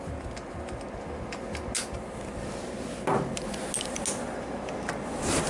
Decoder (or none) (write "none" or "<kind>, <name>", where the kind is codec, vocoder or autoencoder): none